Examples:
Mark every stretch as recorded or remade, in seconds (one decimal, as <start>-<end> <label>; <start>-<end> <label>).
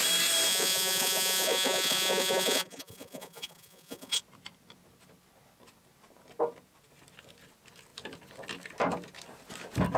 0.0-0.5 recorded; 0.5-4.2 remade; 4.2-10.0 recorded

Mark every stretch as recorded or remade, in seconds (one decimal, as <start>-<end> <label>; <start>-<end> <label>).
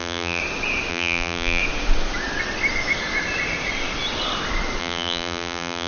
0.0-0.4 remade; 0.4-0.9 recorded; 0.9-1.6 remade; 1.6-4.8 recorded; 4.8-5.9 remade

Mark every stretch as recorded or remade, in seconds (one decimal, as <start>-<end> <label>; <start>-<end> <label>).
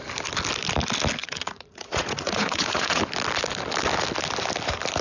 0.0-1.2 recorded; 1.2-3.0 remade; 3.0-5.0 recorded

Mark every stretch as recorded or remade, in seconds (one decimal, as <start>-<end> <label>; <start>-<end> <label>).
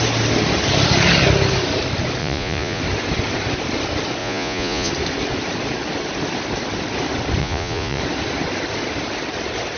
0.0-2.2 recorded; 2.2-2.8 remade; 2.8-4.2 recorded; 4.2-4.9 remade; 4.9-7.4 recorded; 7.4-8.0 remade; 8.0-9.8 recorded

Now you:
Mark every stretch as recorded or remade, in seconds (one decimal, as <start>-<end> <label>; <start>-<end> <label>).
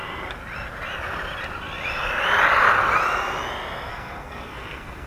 0.0-3.9 recorded; 3.9-5.1 remade